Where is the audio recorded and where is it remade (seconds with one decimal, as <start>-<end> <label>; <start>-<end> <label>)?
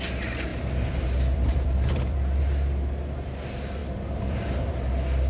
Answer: 0.0-0.5 recorded; 0.5-2.4 remade; 2.4-3.8 recorded; 3.8-4.7 remade; 4.7-5.3 recorded